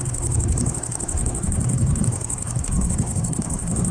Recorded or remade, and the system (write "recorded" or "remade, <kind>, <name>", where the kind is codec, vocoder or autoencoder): remade, codec, SNAC